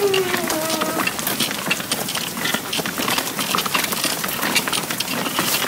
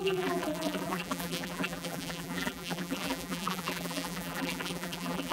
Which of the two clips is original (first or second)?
first